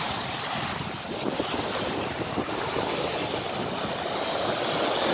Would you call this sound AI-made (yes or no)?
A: no